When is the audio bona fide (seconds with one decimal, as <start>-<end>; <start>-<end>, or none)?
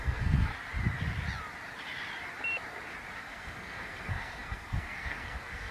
0.5-3.2